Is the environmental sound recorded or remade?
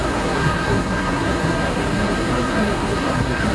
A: remade